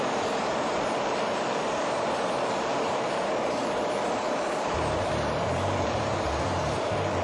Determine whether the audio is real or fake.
fake